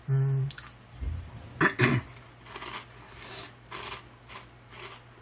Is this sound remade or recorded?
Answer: recorded